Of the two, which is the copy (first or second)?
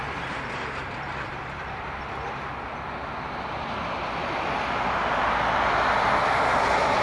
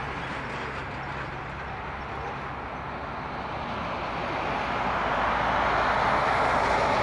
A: first